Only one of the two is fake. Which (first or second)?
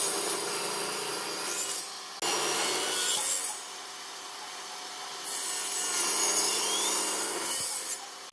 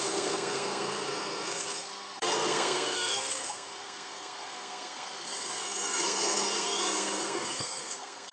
second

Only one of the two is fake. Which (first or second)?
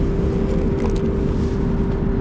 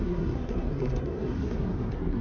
second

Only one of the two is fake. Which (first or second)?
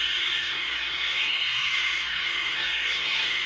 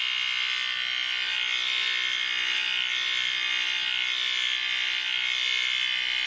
first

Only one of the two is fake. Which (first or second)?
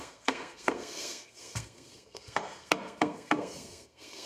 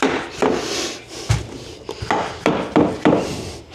first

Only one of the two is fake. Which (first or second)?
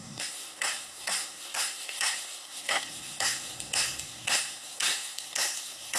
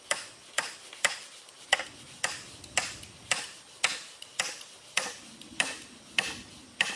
first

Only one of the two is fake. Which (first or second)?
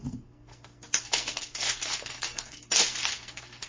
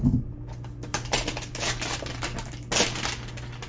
first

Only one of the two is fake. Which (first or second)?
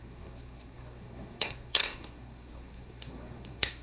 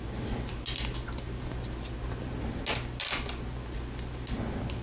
first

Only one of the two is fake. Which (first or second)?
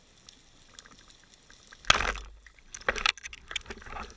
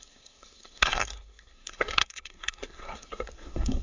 second